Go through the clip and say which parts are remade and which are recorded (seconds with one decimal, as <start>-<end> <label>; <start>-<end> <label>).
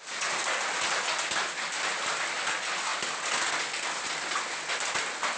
0.0-5.4 recorded